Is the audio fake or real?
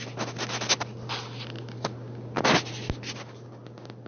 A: real